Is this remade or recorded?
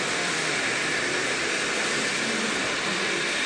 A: recorded